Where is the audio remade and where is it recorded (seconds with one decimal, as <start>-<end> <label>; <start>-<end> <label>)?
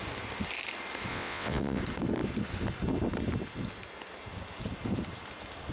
0.0-1.1 recorded; 1.1-1.8 remade; 1.8-5.7 recorded